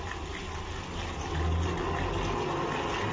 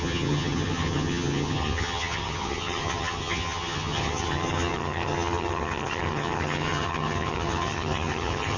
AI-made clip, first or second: second